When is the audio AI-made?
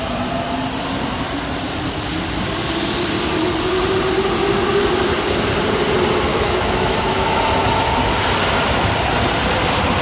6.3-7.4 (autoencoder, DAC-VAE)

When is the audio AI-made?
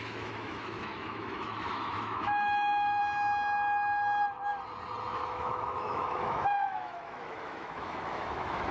0.0-3.0 (autoencoder, DAC-VAE); 5.1-8.7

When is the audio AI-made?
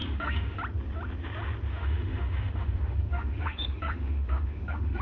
0.0-0.6 (autoencoder, DAC-VAE); 1.7-5.0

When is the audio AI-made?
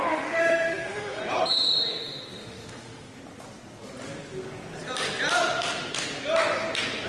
0.0-1.2 (autoencoder, DAC-VAE); 1.9-3.2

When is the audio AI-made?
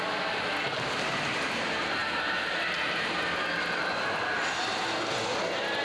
none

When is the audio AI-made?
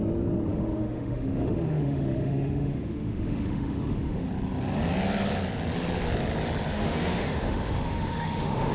0.5-4.3 (autoencoder, DAC-VAE); 6.7-8.7